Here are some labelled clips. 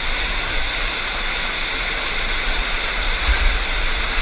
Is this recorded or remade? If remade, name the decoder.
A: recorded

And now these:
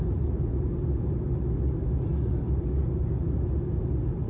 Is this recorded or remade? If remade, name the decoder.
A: recorded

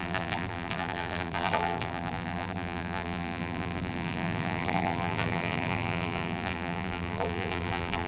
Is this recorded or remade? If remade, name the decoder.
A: remade, vocoder, BigVGAN v2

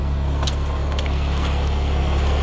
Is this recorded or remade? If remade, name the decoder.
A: remade, codec, SNAC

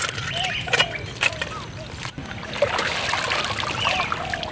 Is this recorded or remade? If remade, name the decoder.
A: recorded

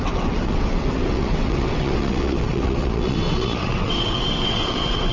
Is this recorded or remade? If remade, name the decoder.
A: remade, vocoder, WaveNeXt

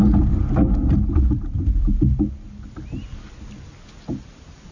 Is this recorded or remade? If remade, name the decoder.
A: recorded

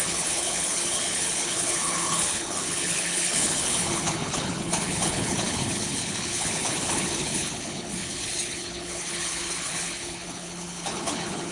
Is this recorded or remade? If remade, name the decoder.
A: remade, codec, HILCodec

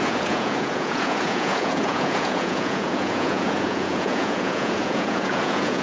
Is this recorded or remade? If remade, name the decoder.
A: remade, vocoder, Vocos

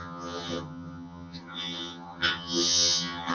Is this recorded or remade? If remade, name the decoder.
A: remade, vocoder, HiFi-GAN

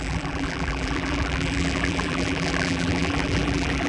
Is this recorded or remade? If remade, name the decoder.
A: remade, vocoder, BigVGAN v2